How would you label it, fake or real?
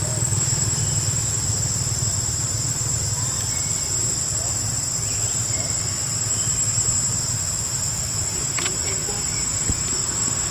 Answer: fake